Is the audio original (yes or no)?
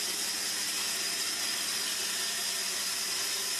yes